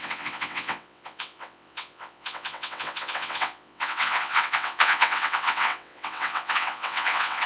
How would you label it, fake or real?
fake